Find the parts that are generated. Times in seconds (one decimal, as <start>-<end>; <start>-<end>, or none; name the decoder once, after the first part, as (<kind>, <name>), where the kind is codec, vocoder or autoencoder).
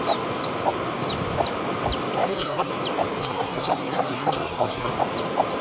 2.2-2.7 (codec, SNAC); 3.2-4.9